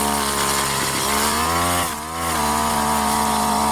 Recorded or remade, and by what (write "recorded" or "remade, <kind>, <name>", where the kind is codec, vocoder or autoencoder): recorded